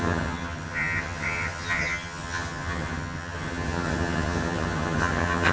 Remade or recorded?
remade